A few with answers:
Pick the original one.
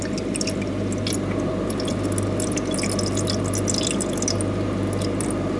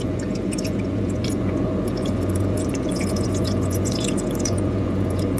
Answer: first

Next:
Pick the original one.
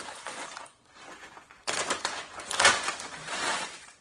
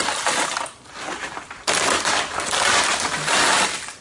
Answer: second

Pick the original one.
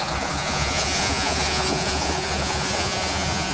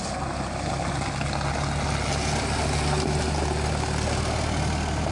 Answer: second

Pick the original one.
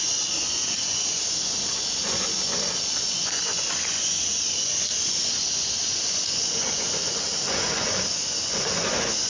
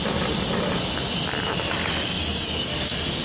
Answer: second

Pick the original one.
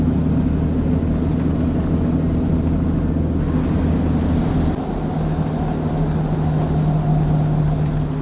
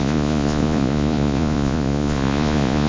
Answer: first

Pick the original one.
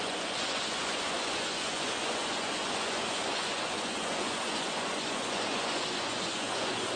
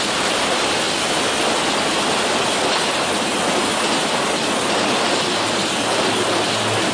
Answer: second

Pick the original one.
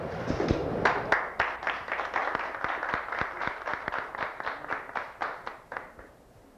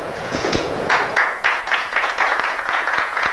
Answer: first